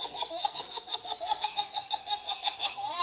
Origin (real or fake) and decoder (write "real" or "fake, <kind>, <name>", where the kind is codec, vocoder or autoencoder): fake, codec, SNAC